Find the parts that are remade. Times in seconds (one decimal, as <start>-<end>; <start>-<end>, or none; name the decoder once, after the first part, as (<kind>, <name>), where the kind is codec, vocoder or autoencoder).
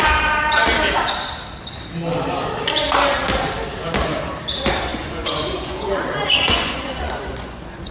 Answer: 4.9-7.9 (vocoder, Vocos)